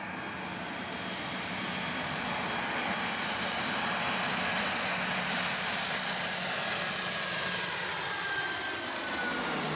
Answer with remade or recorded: recorded